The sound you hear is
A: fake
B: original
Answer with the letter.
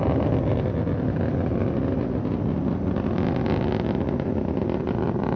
B